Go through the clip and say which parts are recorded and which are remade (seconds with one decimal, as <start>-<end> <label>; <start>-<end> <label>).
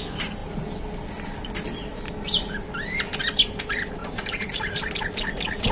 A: 0.0-4.0 recorded; 4.0-4.9 remade; 4.9-5.7 recorded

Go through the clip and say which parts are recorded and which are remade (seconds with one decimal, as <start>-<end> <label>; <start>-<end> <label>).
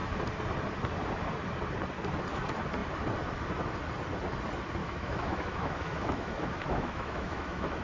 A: 0.0-4.8 recorded; 4.8-7.8 remade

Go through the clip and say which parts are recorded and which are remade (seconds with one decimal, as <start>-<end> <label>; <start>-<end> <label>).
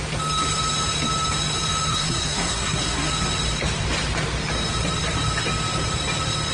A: 0.0-1.9 recorded; 1.9-3.1 remade; 3.1-6.5 recorded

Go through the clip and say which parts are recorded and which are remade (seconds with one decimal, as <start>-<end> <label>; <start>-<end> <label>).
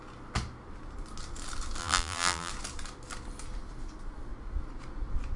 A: 0.0-1.8 recorded; 1.8-2.5 remade; 2.5-5.4 recorded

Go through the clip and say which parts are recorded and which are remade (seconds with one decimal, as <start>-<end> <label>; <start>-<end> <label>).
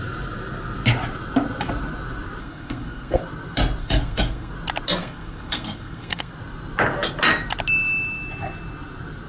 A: 0.0-2.4 recorded; 2.4-3.2 remade; 3.2-3.8 recorded; 3.8-4.5 remade; 4.5-5.0 recorded; 5.0-6.3 remade; 6.3-9.3 recorded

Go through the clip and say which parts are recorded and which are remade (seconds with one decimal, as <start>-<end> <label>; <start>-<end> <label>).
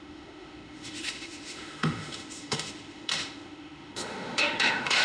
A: 0.0-5.0 remade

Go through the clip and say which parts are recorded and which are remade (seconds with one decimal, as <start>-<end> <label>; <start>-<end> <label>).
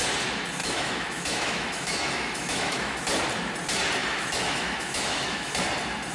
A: 0.0-0.6 recorded; 0.6-3.0 remade; 3.0-4.0 recorded; 4.0-5.5 remade; 5.5-6.1 recorded